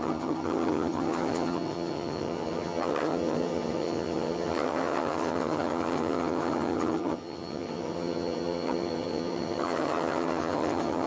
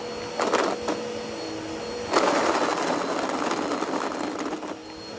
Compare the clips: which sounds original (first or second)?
second